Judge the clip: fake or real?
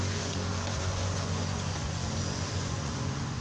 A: fake